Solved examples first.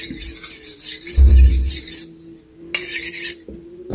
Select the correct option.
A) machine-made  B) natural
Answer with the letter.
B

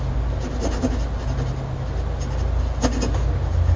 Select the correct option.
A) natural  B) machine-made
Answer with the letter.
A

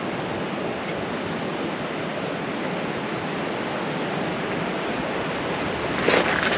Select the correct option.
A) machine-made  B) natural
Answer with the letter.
B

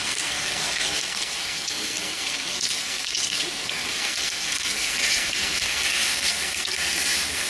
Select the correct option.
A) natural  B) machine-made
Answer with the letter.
B